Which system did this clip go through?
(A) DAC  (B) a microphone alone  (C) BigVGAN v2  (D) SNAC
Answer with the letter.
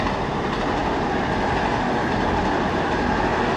B